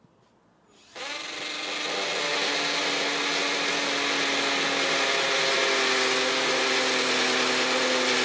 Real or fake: real